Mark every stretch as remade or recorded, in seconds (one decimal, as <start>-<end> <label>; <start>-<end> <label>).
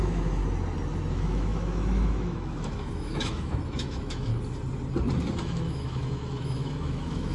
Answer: 0.0-0.4 remade; 0.4-1.1 recorded; 1.1-4.3 remade; 4.3-5.4 recorded; 5.4-7.3 remade